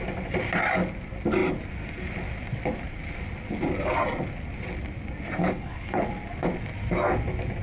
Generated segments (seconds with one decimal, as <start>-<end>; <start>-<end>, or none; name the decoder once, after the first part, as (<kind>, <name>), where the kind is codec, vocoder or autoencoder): 5.4-6.0 (codec, HILCodec)